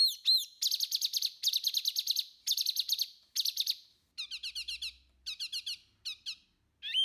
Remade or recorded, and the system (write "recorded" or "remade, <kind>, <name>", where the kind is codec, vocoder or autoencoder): recorded